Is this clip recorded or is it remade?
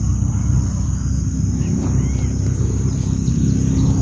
recorded